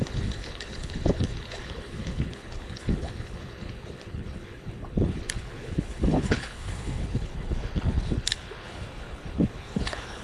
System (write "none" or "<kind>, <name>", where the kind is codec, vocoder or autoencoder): codec, HILCodec